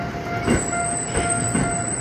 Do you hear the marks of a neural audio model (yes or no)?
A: no